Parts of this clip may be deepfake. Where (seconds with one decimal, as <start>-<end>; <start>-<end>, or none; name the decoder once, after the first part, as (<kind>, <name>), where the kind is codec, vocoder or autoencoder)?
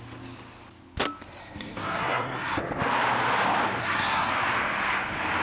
1.4-2.6 (codec, SNAC); 3.8-4.3